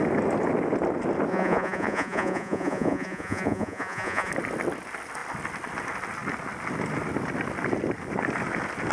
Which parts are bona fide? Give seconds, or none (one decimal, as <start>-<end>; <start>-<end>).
0.0-1.3; 4.3-8.9